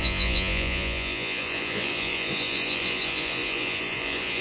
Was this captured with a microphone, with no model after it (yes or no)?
no